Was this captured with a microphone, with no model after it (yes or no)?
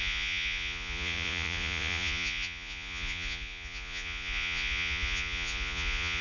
no